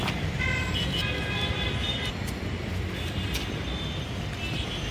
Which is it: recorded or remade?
remade